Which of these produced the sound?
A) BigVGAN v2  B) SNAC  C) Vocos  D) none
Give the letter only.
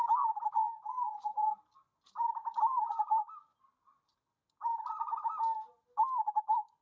D